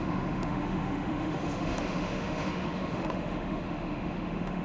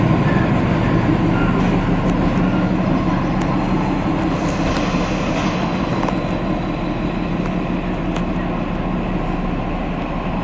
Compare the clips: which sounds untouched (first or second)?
second